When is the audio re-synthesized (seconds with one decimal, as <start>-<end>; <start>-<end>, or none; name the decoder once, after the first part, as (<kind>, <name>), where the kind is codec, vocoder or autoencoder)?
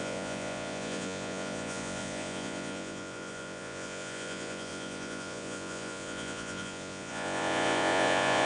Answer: 0.0-8.5 (vocoder, Vocos)